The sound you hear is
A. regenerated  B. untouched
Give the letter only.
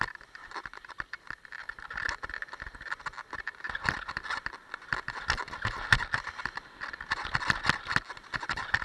B